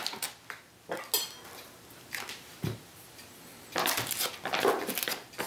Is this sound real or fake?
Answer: real